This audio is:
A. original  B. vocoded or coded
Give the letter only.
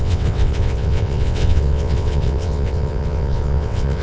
B